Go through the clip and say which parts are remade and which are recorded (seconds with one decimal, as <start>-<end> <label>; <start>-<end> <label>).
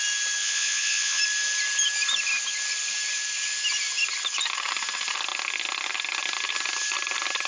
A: 0.0-0.4 recorded; 0.4-1.2 remade; 1.2-7.5 recorded